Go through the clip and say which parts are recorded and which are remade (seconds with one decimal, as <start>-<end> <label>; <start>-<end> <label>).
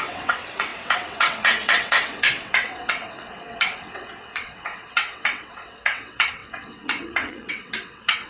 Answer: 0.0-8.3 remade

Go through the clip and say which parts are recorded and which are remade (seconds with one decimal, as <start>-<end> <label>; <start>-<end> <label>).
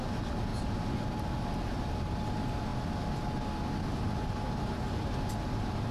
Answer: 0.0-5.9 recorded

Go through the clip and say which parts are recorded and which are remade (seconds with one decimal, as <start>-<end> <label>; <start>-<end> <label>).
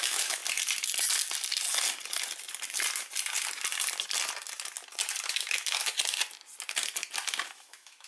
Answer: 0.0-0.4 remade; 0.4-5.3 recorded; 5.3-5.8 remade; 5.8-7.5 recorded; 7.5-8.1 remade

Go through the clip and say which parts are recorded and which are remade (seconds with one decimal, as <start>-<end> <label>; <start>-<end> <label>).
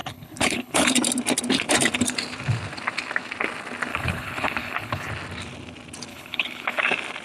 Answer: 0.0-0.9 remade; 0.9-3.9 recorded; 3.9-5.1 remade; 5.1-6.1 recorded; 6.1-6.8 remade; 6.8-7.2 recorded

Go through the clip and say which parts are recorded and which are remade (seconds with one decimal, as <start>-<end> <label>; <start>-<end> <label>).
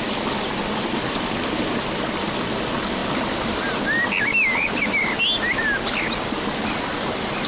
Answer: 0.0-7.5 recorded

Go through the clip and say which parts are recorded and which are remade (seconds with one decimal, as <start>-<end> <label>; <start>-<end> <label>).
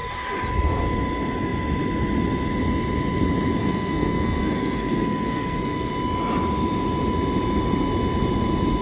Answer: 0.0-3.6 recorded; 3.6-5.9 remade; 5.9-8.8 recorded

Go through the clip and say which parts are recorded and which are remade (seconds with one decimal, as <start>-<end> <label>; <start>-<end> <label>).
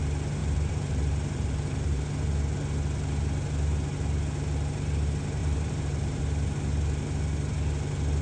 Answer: 0.0-0.4 recorded; 0.4-2.0 remade; 2.0-5.4 recorded; 5.4-6.2 remade; 6.2-8.2 recorded